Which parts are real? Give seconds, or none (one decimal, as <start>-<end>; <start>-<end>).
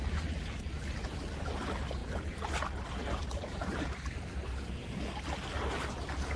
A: 0.0-6.4